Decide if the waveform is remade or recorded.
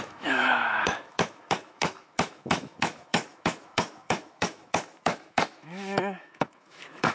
remade